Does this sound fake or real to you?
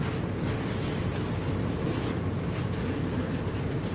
real